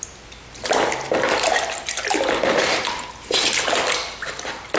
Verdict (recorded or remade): recorded